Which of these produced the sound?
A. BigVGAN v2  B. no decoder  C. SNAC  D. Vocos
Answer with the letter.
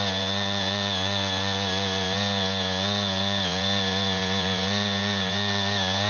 D